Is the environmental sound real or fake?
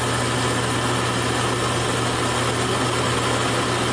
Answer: real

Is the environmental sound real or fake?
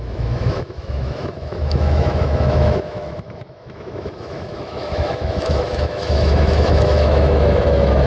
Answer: fake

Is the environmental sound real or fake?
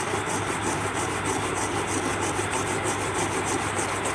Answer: real